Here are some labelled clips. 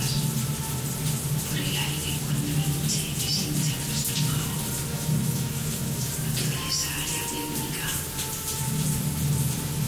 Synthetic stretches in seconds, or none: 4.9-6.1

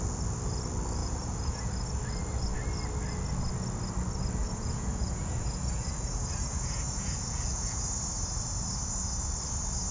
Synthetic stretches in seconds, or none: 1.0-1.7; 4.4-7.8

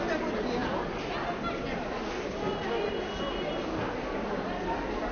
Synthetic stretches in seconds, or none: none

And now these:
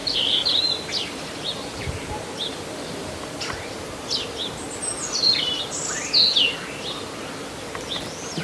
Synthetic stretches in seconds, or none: 0.0-3.4

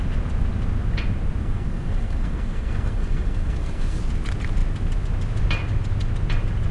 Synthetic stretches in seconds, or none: 1.4-4.0